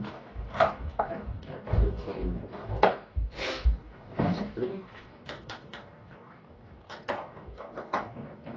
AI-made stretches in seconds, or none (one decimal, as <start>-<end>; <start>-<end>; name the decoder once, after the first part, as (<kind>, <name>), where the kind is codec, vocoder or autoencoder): 0.0-8.6 (codec, DAC)